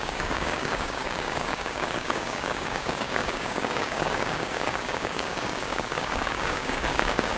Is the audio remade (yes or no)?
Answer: yes